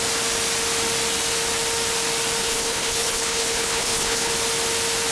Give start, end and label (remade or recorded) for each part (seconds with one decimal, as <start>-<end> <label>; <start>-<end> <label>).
0.0-2.4 recorded; 2.4-4.3 remade; 4.3-5.1 recorded